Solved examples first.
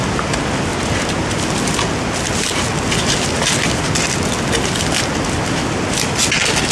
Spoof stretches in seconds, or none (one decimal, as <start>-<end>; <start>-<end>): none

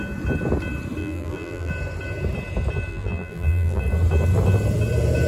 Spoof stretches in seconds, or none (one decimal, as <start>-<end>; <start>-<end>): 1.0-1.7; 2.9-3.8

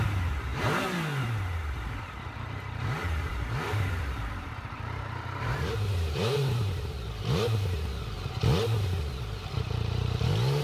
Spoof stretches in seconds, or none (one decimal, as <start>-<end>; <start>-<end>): 0.0-10.6

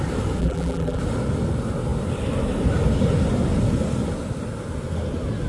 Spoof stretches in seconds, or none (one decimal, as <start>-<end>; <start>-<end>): 0.4-1.0